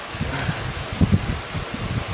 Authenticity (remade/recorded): recorded